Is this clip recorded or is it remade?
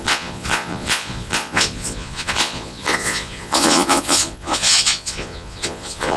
remade